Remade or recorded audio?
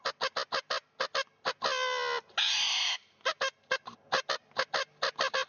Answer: recorded